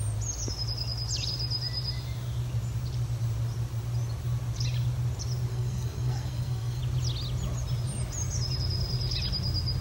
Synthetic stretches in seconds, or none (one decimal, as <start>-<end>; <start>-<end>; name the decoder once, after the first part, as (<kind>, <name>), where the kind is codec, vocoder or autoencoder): 5.5-6.8 (codec, SNAC)